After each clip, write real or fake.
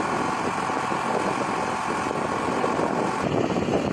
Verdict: real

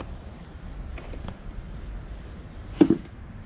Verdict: real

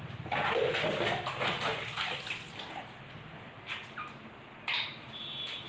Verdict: real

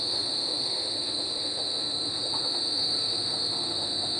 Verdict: fake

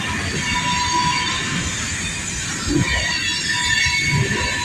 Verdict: real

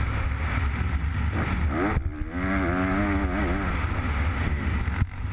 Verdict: real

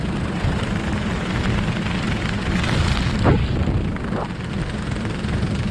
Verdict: real